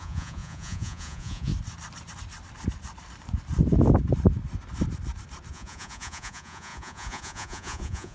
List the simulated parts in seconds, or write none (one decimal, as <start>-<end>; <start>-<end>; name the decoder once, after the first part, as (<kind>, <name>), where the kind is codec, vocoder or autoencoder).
0.0-1.5 (vocoder, Vocos); 5.5-8.1